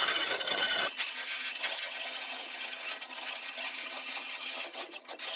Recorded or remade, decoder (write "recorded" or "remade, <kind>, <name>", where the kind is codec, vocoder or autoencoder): remade, vocoder, HiFi-GAN